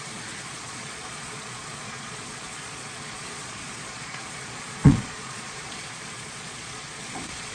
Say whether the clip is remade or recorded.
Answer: remade